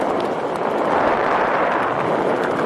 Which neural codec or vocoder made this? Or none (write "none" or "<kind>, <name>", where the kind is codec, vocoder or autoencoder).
none